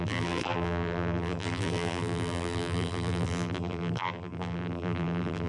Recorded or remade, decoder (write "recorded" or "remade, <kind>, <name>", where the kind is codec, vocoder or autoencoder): remade, vocoder, BigVGAN v2